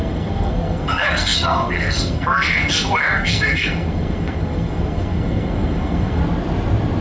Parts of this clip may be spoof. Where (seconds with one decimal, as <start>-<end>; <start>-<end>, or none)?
0.0-6.2